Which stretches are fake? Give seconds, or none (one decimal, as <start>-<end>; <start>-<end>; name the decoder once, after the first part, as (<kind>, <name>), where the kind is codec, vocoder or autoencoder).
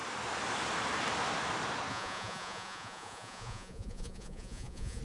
1.9-5.0 (vocoder, Vocos)